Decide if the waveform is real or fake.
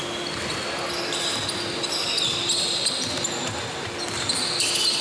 real